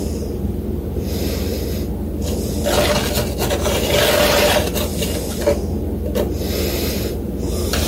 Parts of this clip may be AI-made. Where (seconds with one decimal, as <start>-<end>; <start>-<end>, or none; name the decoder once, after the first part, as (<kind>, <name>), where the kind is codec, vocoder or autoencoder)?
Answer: 0.0-1.5 (vocoder, BigVGAN v2); 3.5-4.9; 6.9-7.9